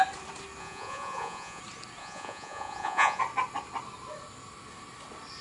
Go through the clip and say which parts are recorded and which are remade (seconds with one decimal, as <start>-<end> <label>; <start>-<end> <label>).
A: 0.0-0.6 recorded; 0.6-1.6 remade; 1.6-2.0 recorded; 2.0-3.2 remade; 3.2-5.4 recorded